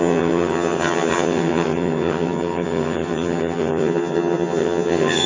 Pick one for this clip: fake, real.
fake